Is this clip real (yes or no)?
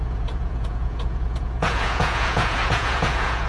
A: no